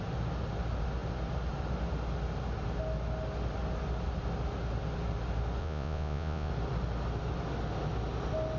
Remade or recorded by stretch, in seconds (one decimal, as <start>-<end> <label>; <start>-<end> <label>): 0.0-5.6 recorded; 5.6-6.5 remade; 6.5-8.6 recorded